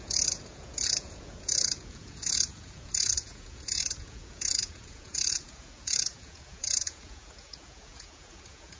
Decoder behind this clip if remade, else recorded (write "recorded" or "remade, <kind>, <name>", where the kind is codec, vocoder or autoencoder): remade, vocoder, Vocos